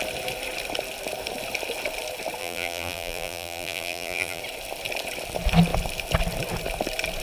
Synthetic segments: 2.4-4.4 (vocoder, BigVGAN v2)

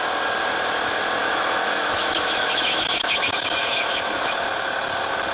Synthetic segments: 1.2-4.4 (autoencoder, DAC-VAE)

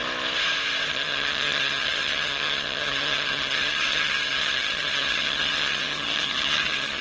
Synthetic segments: 0.9-7.0 (vocoder, HiFi-GAN)